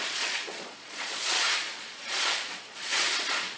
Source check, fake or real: fake